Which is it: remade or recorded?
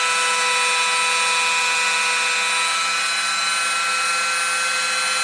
recorded